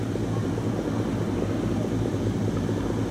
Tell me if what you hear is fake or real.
real